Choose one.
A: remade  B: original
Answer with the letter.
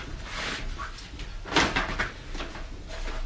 B